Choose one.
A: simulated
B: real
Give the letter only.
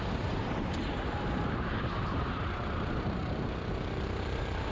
A